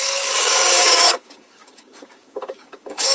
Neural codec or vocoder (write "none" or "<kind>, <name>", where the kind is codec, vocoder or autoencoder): codec, DAC